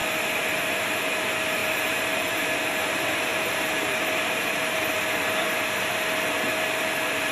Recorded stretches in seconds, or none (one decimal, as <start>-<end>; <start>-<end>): 0.0-1.6; 2.4-3.3; 5.1-7.3